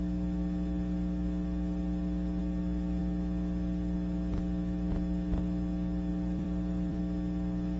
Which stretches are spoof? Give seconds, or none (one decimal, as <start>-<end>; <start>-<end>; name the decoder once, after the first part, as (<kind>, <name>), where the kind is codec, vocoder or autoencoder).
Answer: 6.1-7.0 (vocoder, BigVGAN v2)